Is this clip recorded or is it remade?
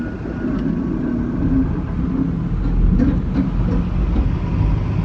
recorded